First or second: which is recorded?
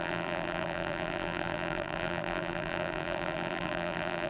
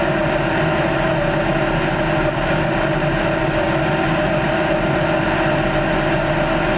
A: second